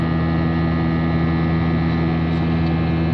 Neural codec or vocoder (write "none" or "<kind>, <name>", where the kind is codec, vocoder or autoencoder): none